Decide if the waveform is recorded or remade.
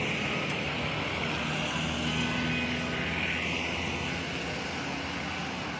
recorded